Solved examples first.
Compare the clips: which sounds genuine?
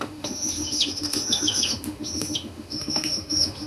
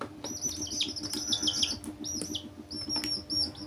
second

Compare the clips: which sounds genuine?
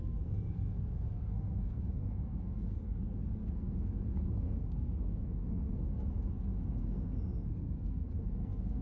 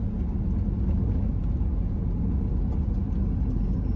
second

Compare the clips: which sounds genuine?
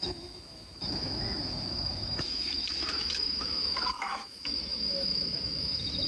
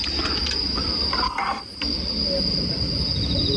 second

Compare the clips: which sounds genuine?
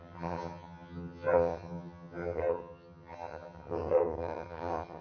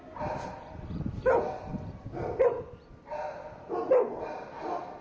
second